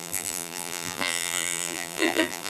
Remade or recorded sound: remade